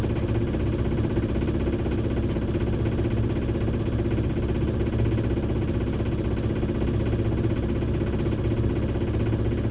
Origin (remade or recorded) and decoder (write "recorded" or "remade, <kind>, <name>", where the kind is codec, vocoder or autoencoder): recorded